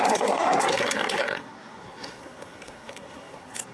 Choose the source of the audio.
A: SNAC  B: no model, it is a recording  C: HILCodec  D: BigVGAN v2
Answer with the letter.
A